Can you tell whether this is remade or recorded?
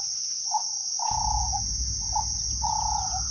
recorded